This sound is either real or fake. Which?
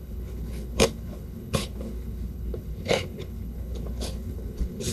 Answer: fake